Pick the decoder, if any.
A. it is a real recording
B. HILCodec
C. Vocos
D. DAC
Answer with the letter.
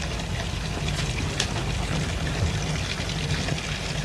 A